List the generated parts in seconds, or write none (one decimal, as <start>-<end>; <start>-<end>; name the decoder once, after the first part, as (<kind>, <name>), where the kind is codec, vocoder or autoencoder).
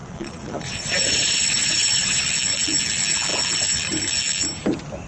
0.0-2.2 (vocoder, Vocos)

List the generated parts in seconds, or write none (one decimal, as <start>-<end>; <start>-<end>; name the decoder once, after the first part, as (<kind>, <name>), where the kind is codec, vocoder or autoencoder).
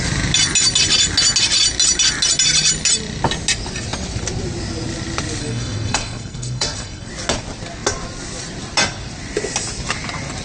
5.4-7.1 (codec, SNAC)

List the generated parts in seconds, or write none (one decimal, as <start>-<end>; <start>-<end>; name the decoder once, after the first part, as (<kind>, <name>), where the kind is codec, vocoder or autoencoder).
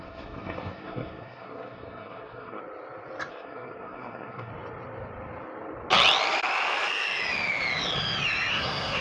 0.0-2.6 (codec, SNAC); 3.3-4.5; 8.5-9.0